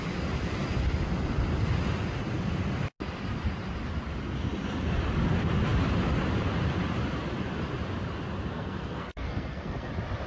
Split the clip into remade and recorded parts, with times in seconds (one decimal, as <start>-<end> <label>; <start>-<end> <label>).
0.0-8.5 recorded; 8.5-9.9 remade; 9.9-10.3 recorded